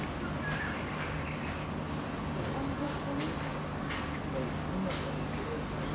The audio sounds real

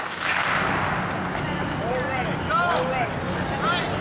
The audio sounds real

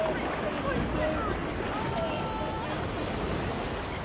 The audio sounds real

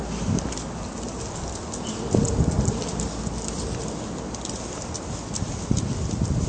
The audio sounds real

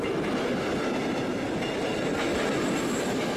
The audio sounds real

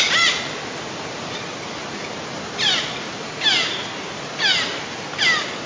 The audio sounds real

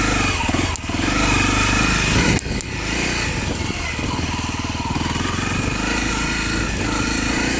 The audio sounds real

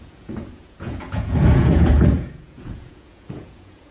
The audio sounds fake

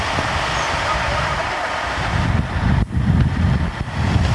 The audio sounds real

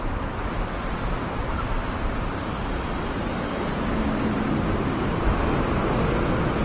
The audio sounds real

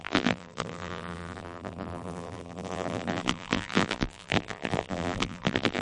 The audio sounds fake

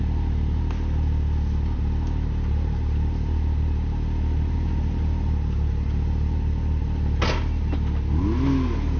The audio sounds real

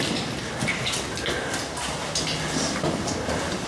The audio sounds real